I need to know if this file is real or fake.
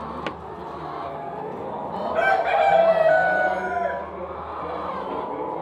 real